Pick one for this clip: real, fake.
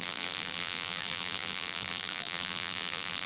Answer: fake